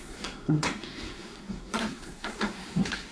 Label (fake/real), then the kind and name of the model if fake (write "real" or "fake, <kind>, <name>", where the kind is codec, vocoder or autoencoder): fake, codec, SNAC